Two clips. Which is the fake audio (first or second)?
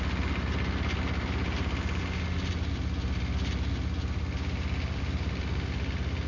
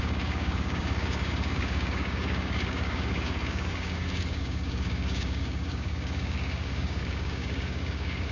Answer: second